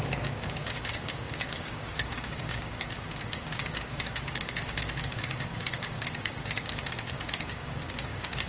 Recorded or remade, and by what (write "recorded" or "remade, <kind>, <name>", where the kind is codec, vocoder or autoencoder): remade, codec, DAC